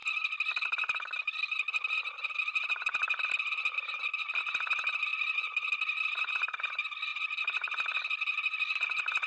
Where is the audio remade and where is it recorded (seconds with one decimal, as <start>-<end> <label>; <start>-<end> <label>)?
0.0-9.3 recorded